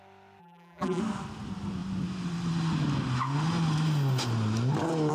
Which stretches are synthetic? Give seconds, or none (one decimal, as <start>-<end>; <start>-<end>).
0.4-1.0